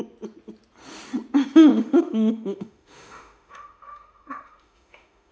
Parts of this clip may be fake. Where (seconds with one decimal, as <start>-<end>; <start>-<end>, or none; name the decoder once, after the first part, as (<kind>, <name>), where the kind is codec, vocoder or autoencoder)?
1.7-5.3 (autoencoder, DAC-VAE)